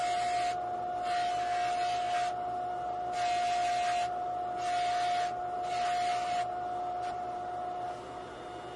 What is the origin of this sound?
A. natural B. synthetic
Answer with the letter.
A